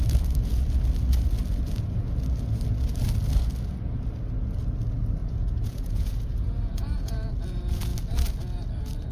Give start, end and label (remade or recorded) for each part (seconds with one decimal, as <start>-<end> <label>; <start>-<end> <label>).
0.0-5.2 recorded; 5.2-7.3 remade; 7.3-9.1 recorded